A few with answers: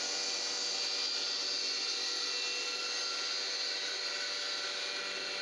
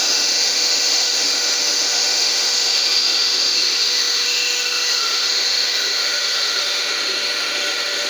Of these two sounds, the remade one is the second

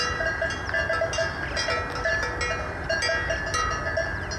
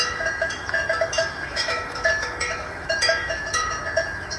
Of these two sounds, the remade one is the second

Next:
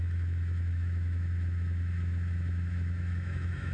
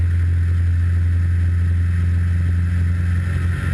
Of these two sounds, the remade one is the first